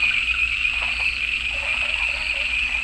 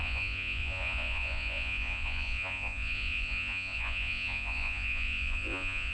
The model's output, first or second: second